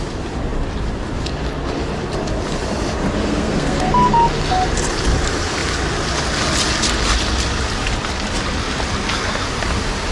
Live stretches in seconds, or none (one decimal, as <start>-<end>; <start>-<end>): 0.0-3.2; 3.9-10.1